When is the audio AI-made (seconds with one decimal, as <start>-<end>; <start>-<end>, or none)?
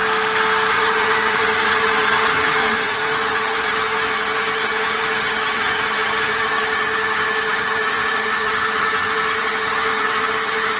0.7-10.8